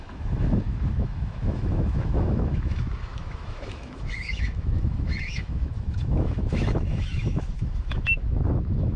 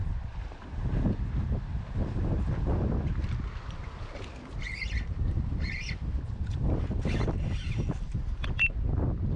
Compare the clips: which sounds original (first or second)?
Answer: second